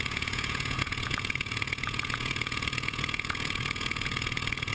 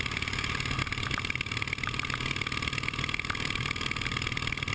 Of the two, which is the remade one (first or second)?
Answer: first